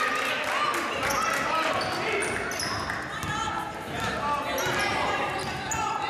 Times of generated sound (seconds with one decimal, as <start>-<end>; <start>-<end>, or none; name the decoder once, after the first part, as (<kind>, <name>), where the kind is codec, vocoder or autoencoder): 4.9-6.1 (vocoder, BigVGAN v2)